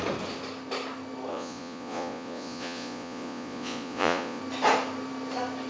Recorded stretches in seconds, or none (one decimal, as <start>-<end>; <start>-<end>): 0.0-1.3; 4.4-5.7